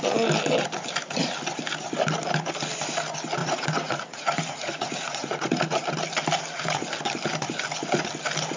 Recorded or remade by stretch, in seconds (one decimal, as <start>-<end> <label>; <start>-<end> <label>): 0.0-3.4 recorded; 3.4-5.8 remade; 5.8-8.6 recorded